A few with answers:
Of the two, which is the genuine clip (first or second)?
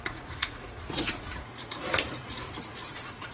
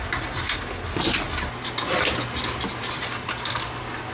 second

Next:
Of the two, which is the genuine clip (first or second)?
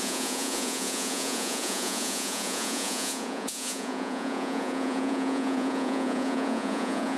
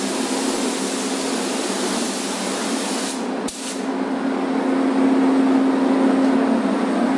second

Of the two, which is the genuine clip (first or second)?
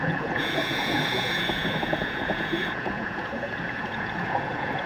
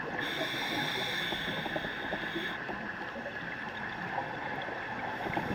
second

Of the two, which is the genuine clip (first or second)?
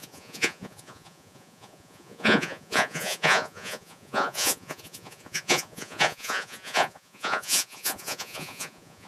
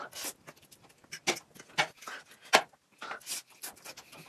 second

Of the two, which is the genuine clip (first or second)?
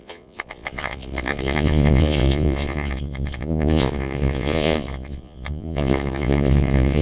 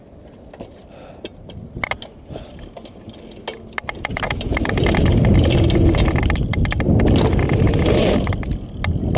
second